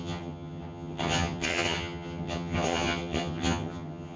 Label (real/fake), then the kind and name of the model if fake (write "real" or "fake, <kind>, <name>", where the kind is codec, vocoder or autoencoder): fake, vocoder, HiFi-GAN